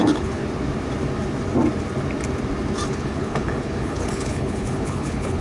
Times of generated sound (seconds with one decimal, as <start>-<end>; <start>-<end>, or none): 0.0-0.4; 2.9-5.4